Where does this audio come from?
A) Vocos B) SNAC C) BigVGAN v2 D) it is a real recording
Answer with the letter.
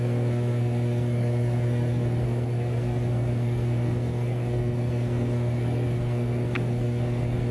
B